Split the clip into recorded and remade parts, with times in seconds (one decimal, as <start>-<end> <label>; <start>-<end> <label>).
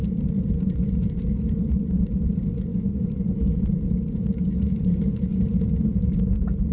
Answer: 0.0-6.7 recorded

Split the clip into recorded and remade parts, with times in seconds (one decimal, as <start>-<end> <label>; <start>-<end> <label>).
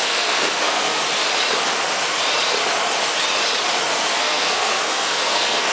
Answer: 0.0-1.0 remade; 1.0-4.1 recorded; 4.1-5.7 remade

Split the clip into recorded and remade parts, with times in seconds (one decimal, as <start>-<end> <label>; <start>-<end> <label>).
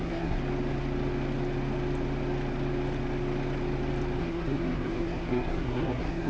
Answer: 0.0-0.4 remade; 0.4-4.2 recorded; 4.2-6.3 remade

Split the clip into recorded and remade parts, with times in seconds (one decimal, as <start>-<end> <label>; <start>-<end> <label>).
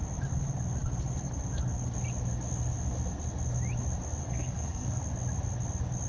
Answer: 0.0-4.2 recorded; 4.2-5.0 remade; 5.0-6.1 recorded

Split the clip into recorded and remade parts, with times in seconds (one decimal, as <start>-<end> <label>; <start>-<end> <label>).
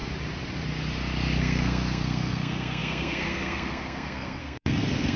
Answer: 0.0-1.4 recorded; 1.4-5.2 remade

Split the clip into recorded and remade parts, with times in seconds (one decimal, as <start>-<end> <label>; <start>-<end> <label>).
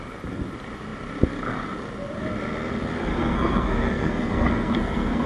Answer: 0.0-3.1 recorded; 3.1-5.3 remade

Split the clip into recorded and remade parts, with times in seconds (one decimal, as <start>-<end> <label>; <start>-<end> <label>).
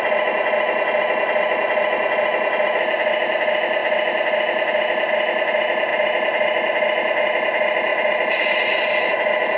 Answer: 0.0-9.6 recorded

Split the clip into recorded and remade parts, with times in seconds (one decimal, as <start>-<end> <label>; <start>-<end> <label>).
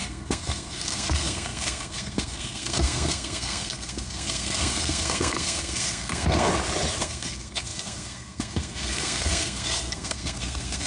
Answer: 0.0-6.5 remade; 6.5-7.0 recorded; 7.0-10.9 remade